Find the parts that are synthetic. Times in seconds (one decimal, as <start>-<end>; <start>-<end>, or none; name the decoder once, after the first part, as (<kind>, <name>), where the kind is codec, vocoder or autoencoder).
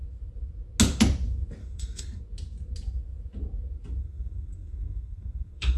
1.6-2.2 (codec, SNAC); 4.0-5.8